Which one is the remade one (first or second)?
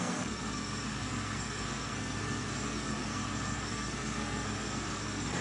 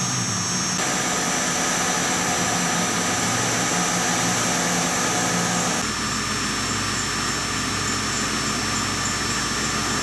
first